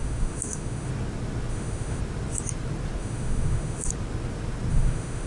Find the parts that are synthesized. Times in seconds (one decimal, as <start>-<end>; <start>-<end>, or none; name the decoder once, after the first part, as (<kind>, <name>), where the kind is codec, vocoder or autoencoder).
0.0-0.9 (autoencoder, DAC-VAE); 1.5-2.0; 3.0-3.9; 4.7-5.3